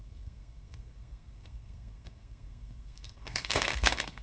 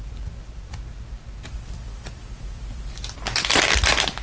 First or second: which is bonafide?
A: second